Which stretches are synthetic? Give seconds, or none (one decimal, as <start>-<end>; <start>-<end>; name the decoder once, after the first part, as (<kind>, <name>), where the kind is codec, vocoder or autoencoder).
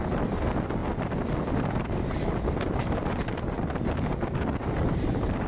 none